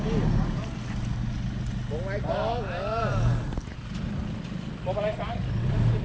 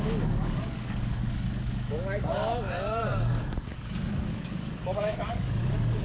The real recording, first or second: first